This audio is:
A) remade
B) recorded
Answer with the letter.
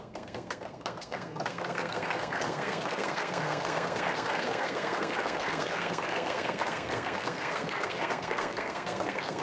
A